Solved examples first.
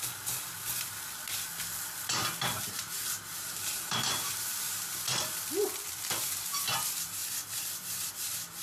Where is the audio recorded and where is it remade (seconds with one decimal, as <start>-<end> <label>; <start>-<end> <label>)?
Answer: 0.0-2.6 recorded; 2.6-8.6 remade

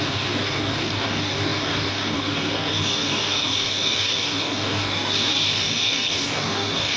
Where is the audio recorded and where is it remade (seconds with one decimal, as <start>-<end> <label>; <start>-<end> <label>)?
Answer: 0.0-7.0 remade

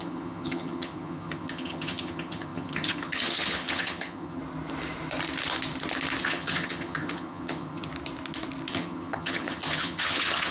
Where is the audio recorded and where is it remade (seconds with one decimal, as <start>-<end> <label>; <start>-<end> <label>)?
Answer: 0.0-4.4 remade; 4.4-6.2 recorded; 6.2-7.9 remade; 7.9-8.7 recorded; 8.7-10.5 remade

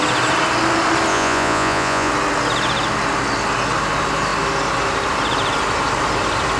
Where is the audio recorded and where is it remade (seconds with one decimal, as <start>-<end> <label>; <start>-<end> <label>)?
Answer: 0.0-1.1 recorded; 1.1-2.1 remade; 2.1-6.6 recorded